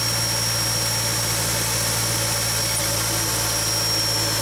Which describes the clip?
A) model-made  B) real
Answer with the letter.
B